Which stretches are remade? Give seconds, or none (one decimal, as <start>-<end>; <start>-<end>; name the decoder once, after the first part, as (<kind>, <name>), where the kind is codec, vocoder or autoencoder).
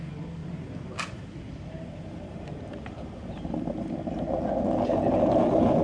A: 0.4-3.9 (vocoder, BigVGAN v2)